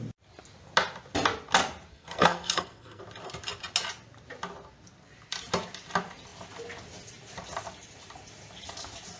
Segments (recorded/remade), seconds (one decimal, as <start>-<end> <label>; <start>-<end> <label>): 0.0-1.9 recorded; 1.9-3.0 remade; 3.0-9.2 recorded